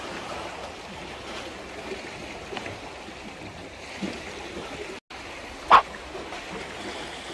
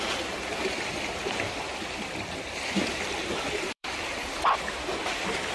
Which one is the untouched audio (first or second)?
first